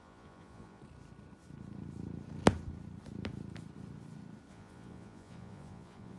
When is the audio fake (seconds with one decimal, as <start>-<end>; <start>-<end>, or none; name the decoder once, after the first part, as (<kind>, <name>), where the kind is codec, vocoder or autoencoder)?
0.0-0.8 (vocoder, Vocos); 4.5-6.2